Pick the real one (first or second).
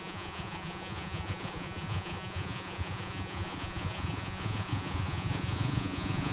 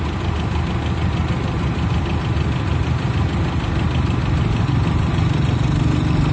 second